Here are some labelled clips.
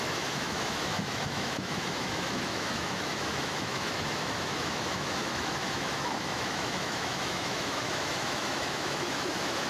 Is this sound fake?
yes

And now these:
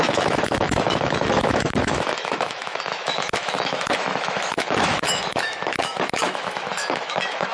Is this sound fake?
yes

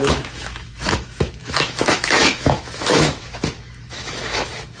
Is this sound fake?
yes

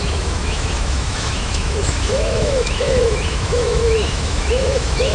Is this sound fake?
yes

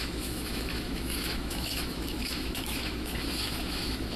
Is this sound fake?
yes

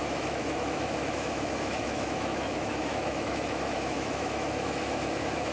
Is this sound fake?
yes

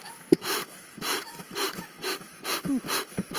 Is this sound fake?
yes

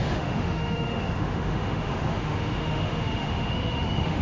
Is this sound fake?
yes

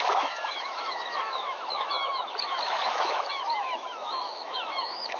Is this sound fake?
yes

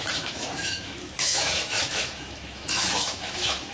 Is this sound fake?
yes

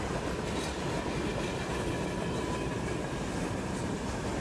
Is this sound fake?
no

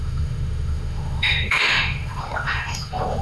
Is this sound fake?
yes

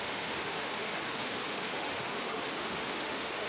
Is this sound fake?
yes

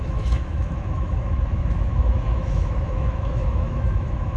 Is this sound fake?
yes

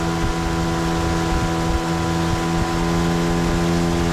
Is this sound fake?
no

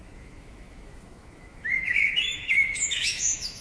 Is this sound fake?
yes